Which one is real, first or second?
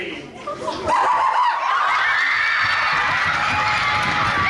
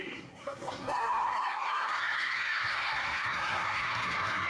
first